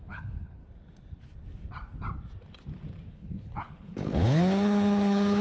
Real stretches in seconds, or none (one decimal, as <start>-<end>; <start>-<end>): 0.6-3.1